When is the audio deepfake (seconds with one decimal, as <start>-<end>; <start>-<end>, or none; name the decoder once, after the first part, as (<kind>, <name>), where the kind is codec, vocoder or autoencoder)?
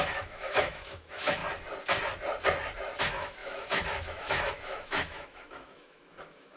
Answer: 0.0-1.4 (autoencoder, DAC-VAE); 3.0-6.6